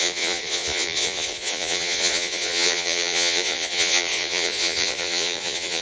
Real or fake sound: fake